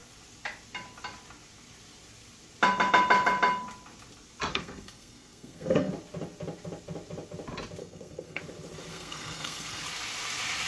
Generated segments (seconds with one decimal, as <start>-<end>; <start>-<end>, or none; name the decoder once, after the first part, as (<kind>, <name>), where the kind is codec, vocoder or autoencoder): 4.5-5.9 (codec, SNAC); 7.8-8.4; 8.9-9.8